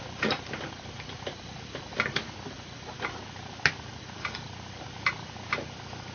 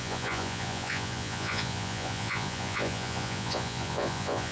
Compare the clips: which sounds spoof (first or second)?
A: second